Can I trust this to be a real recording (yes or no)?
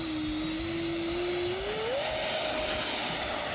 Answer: yes